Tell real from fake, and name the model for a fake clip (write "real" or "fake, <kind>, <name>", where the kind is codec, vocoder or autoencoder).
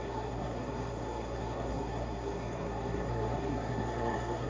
fake, codec, SNAC